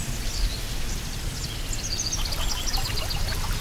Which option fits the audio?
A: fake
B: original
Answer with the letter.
B